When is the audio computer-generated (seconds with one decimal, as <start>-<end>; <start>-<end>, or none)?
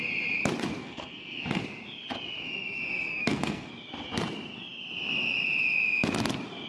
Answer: 0.8-1.6; 3.1-3.7